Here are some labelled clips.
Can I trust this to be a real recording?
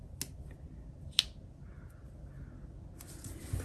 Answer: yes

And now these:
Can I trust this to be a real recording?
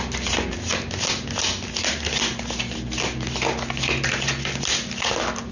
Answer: yes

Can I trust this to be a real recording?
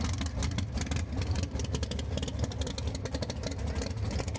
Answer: yes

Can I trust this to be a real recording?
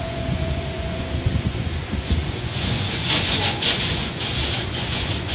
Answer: no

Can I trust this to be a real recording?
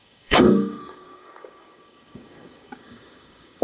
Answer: no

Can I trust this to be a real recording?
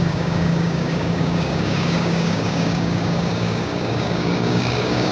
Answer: no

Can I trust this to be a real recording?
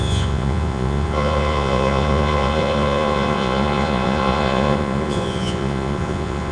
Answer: no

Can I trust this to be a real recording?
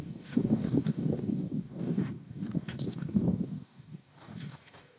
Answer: no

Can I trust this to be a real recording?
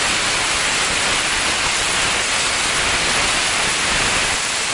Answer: yes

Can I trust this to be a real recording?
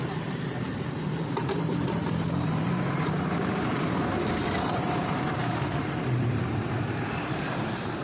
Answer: no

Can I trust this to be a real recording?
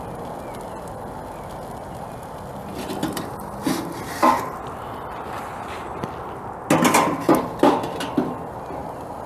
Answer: yes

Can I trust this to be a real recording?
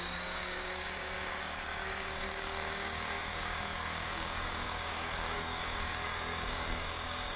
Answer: no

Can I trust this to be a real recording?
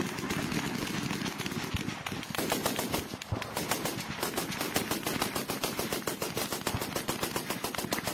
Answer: yes